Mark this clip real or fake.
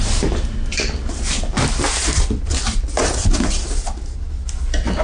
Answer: real